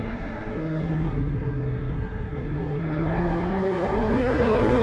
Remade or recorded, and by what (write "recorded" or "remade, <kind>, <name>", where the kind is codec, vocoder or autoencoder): remade, codec, SNAC